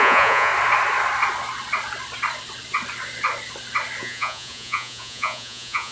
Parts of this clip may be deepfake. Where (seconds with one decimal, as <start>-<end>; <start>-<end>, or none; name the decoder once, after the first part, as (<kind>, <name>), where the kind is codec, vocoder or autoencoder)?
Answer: 0.0-0.5 (vocoder, Vocos); 4.0-5.9